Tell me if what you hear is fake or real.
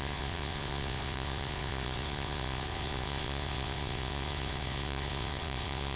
fake